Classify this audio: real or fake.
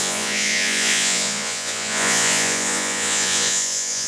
fake